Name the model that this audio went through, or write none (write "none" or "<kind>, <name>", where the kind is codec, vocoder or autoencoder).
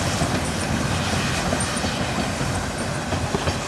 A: none